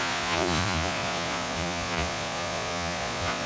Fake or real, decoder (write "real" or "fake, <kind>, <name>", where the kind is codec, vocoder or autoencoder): fake, vocoder, Vocos